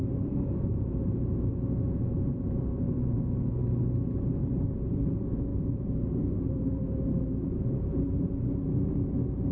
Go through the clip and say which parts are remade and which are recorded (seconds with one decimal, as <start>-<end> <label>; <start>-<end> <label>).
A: 0.0-1.3 remade; 1.3-1.8 recorded; 1.8-3.6 remade; 3.6-4.4 recorded; 4.4-9.5 remade